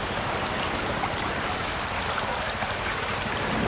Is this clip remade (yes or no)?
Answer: yes